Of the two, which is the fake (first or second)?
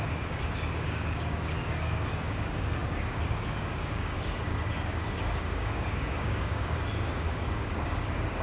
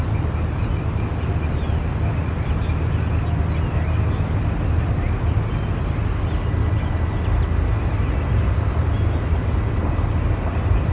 first